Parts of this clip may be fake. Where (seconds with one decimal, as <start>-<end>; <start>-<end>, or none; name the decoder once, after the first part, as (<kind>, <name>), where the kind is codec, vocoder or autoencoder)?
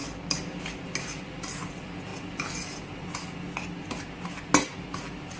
none